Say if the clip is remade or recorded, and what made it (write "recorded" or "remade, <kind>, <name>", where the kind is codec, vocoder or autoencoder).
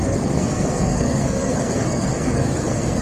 remade, codec, SNAC